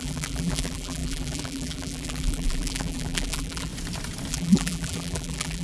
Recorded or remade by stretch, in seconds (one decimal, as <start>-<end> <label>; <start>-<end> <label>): 0.0-3.7 remade; 3.7-4.3 recorded; 4.3-5.6 remade